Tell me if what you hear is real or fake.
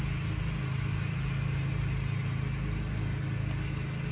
real